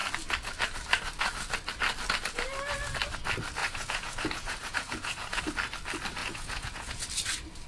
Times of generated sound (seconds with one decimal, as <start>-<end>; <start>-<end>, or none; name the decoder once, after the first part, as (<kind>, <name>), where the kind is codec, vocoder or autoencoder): 3.6-5.4 (vocoder, Vocos); 6.2-7.0